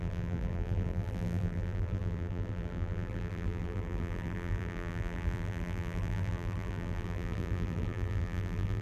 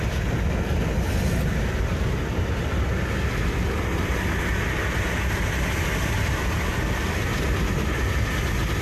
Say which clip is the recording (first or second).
second